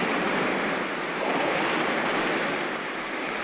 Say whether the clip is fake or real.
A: real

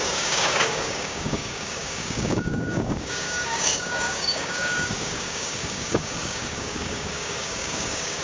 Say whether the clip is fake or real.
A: fake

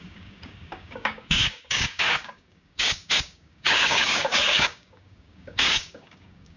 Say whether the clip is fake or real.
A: fake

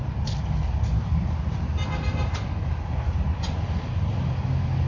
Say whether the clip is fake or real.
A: real